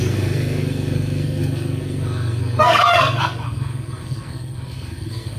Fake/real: fake